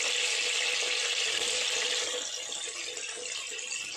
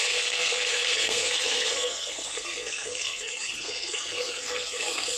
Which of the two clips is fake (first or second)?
second